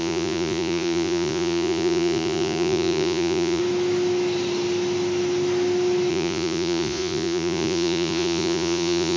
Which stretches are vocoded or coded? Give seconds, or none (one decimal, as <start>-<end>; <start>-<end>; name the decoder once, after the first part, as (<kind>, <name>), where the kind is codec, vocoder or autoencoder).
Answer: 0.0-3.6 (vocoder, Vocos); 6.1-9.2